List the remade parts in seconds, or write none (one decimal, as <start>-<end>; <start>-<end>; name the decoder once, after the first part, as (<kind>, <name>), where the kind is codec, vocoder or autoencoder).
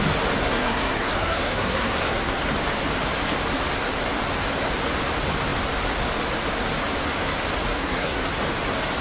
0.4-2.4 (codec, SNAC); 7.7-8.2